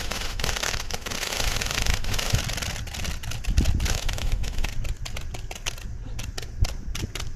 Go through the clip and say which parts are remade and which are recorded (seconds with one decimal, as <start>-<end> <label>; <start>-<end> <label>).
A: 0.0-2.4 remade; 2.4-3.9 recorded; 3.9-4.7 remade; 4.7-7.4 recorded

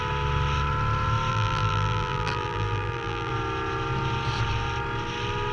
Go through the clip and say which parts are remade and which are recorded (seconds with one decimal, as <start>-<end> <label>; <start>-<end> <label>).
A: 0.0-1.3 recorded; 1.3-3.3 remade; 3.3-5.5 recorded

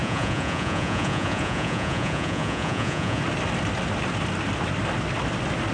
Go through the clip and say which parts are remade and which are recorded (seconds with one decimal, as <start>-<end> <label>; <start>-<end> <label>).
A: 0.0-3.2 remade; 3.2-5.7 recorded

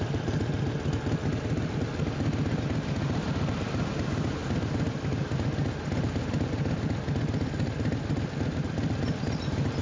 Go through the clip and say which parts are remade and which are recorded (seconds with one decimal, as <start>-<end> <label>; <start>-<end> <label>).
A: 0.0-9.8 recorded

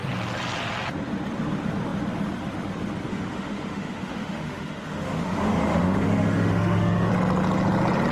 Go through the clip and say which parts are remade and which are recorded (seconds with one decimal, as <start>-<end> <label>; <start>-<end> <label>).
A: 0.0-3.1 recorded; 3.1-7.1 remade; 7.1-8.1 recorded

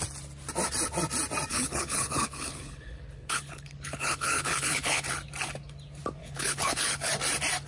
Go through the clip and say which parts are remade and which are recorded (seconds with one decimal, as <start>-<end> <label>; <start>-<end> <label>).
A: 0.0-1.5 recorded; 1.5-5.1 remade; 5.1-6.2 recorded; 6.2-7.1 remade; 7.1-7.7 recorded

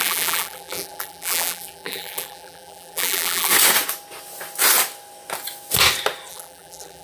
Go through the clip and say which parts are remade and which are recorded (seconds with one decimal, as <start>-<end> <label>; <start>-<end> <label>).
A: 0.0-3.5 remade; 3.5-6.3 recorded; 6.3-7.0 remade

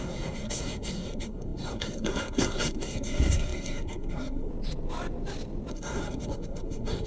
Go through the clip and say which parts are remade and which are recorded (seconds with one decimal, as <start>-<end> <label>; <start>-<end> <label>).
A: 0.0-4.5 remade; 4.5-5.7 recorded; 5.7-7.1 remade